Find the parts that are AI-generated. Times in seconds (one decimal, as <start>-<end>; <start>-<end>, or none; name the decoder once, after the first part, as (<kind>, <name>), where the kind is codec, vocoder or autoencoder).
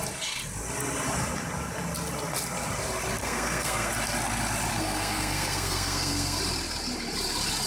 3.2-3.9 (codec, SNAC); 4.7-6.4